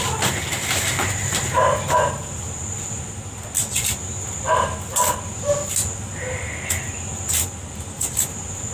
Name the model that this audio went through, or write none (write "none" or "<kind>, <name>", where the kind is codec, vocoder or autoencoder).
none